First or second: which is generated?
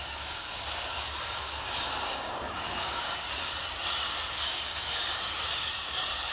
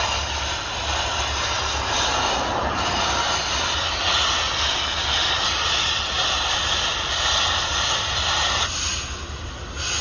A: first